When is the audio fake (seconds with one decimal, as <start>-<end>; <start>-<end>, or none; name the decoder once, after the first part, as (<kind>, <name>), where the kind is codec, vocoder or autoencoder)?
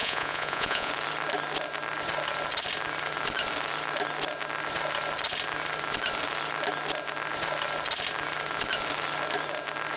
0.0-0.9 (vocoder, Vocos)